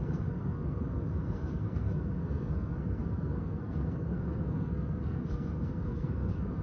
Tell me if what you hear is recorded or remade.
remade